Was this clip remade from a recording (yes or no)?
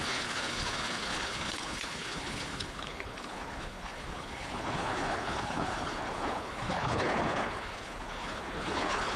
yes